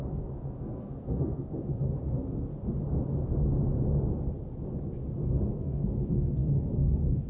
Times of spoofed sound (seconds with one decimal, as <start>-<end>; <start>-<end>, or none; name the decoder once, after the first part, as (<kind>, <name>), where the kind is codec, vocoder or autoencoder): 0.0-2.5 (codec, SNAC); 5.5-7.3